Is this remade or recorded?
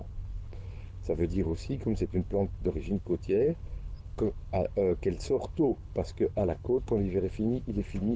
remade